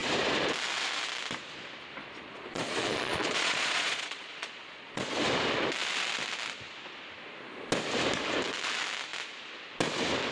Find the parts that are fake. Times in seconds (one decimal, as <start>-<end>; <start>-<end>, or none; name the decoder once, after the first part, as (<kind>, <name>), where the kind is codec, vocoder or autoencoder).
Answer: 2.0-5.0 (vocoder, Vocos)